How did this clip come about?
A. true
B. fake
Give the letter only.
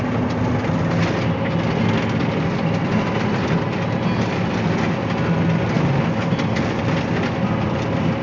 A